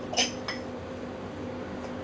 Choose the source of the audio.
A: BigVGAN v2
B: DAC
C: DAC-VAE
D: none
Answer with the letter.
D